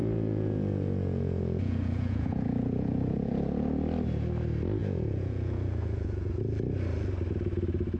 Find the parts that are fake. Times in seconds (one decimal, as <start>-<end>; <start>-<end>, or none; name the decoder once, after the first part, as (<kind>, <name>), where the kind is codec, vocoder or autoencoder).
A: 0.0-3.3 (vocoder, Vocos); 4.8-6.4